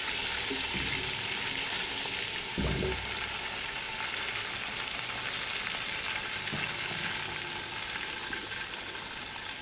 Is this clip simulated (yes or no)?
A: no